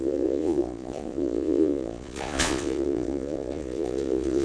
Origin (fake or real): fake